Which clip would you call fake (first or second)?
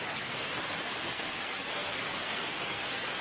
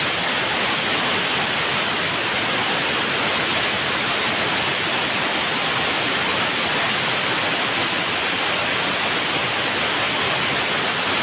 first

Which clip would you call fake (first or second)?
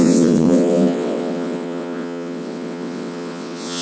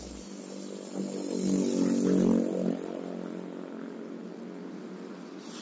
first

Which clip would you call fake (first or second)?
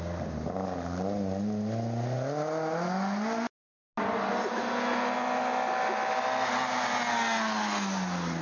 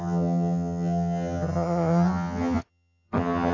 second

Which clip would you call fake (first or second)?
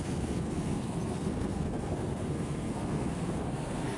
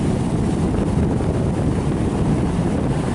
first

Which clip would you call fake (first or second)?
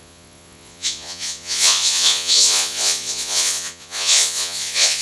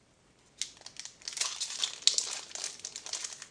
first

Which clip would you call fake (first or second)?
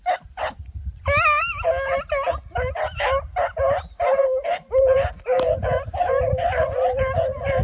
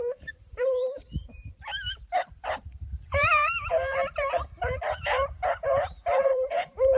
second